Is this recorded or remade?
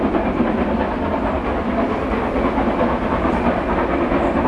recorded